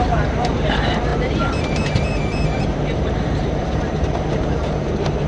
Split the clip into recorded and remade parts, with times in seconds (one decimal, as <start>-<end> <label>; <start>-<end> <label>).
0.0-5.3 remade